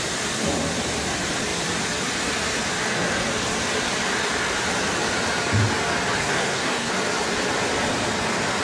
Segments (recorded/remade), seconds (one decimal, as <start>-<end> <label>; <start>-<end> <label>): 0.0-6.2 recorded; 6.2-6.9 remade; 6.9-8.6 recorded